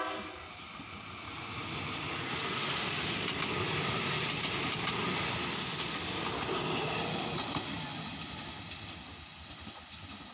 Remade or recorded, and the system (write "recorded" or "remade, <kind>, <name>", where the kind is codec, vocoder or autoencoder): recorded